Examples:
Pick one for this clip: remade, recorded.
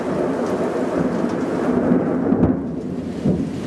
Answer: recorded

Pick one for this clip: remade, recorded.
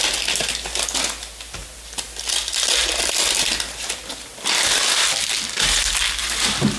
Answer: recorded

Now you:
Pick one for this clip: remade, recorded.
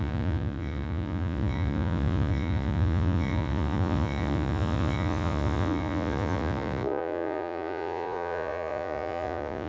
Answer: remade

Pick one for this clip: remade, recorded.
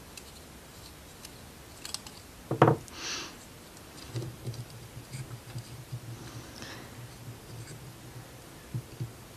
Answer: recorded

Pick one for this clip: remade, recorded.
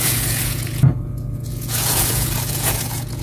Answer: remade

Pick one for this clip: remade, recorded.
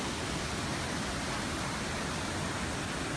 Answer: recorded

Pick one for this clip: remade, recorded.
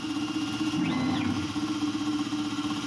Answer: recorded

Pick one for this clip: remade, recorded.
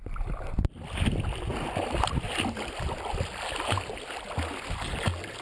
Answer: recorded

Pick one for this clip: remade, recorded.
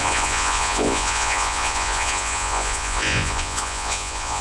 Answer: remade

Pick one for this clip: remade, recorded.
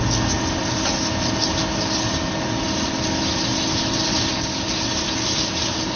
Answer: recorded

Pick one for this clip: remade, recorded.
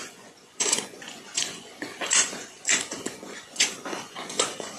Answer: remade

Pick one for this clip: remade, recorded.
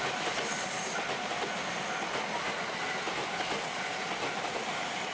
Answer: recorded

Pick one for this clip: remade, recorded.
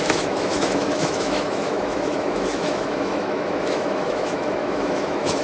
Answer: remade